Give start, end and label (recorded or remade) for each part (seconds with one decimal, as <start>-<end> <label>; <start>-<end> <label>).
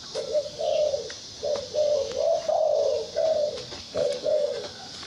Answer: 0.0-0.7 remade; 0.7-3.8 recorded; 3.8-5.1 remade